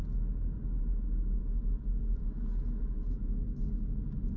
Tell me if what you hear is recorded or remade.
recorded